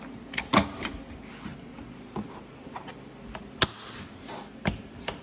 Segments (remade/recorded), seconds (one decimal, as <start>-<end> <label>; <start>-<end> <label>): 0.0-5.2 recorded